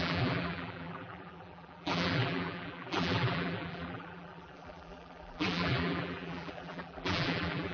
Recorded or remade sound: remade